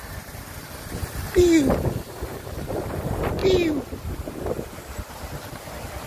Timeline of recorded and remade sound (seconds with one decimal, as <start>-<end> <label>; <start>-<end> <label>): 0.0-3.4 recorded; 3.4-4.3 remade; 4.3-6.1 recorded